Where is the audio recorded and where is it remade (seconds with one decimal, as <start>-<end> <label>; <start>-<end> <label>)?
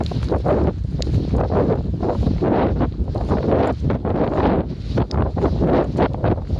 0.0-6.6 recorded